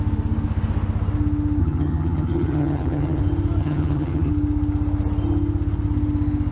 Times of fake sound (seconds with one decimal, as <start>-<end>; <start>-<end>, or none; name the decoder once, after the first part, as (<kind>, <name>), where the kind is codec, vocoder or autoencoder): 1.6-3.2 (vocoder, HiFi-GAN); 3.6-4.3